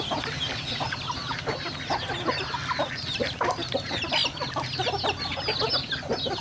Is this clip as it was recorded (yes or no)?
yes